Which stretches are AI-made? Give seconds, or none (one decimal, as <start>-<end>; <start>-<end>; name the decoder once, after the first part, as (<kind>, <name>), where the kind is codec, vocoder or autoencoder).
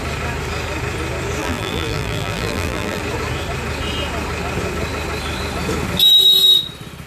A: 1.4-3.0 (vocoder, BigVGAN v2)